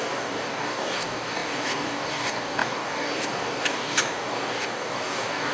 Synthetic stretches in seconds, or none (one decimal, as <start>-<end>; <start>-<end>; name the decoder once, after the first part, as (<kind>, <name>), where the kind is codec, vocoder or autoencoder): 0.0-5.5 (codec, DAC)